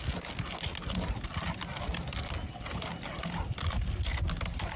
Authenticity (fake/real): real